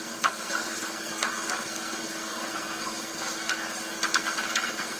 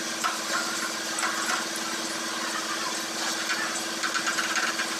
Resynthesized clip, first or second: first